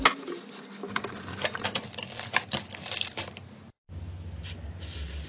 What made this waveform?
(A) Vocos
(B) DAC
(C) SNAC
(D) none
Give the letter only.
D